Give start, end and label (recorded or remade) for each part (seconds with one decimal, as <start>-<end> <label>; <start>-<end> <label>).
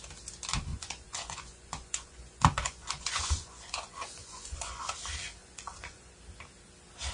0.0-0.7 recorded; 0.7-4.8 remade; 4.8-5.4 recorded; 5.4-6.1 remade; 6.1-7.1 recorded